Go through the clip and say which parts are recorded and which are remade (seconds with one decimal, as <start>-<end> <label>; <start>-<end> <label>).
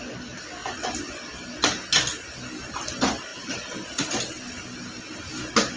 0.0-5.8 recorded